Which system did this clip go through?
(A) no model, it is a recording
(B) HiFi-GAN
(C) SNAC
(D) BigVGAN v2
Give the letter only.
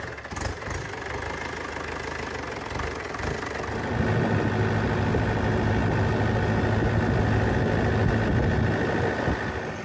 A